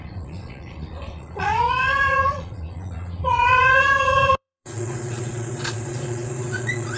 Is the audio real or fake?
fake